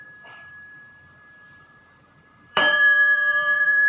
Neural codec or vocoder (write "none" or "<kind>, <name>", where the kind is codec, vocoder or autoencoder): vocoder, BigVGAN v2